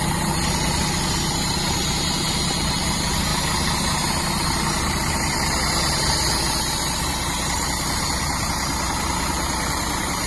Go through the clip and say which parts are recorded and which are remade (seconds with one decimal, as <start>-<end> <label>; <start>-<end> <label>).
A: 0.0-10.3 recorded